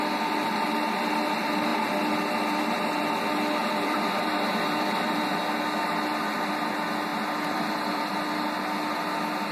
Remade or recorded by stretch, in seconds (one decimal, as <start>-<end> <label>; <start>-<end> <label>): 0.0-3.6 recorded; 3.6-5.4 remade; 5.4-7.1 recorded; 7.1-8.2 remade; 8.2-9.5 recorded